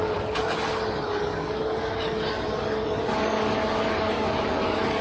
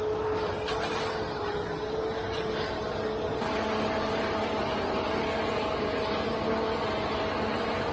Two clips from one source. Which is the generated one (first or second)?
first